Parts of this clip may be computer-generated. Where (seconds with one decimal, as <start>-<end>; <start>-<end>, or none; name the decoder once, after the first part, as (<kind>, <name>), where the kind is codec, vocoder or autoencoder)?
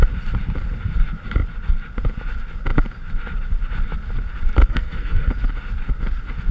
4.6-5.3 (codec, SNAC)